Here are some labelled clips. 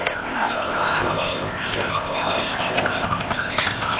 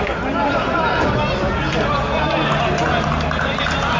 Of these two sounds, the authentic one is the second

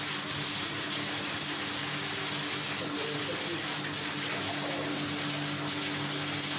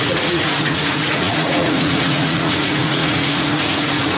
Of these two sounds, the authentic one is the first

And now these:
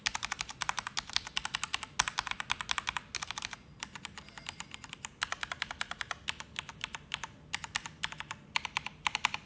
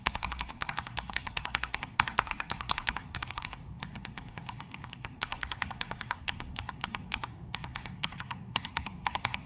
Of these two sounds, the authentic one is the first